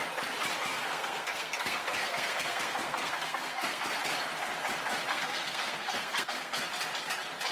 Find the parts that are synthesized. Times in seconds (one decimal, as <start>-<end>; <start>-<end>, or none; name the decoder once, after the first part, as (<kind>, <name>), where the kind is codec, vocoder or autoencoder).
0.7-4.0 (codec, SNAC); 5.1-6.7